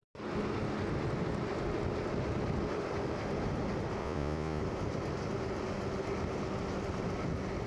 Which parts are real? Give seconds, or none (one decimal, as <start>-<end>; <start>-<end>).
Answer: 0.0-4.0; 4.6-7.7